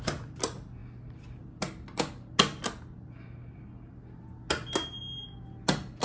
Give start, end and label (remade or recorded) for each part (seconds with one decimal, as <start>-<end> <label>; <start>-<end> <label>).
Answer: 0.0-6.0 recorded